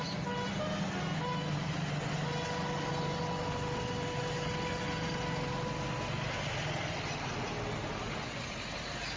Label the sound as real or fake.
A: real